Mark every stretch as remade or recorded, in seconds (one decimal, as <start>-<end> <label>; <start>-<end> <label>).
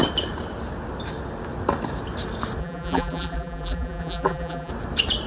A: 0.0-2.6 recorded; 2.6-4.7 remade; 4.7-5.3 recorded